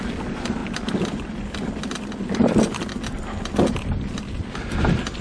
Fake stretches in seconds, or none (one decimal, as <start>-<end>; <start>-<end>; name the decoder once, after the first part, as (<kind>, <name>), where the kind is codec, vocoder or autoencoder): none